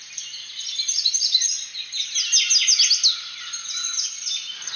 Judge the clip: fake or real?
real